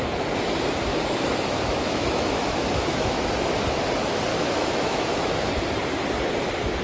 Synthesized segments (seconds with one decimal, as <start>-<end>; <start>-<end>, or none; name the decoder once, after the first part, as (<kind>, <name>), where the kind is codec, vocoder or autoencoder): 0.9-3.3 (autoencoder, DAC-VAE); 4.3-5.5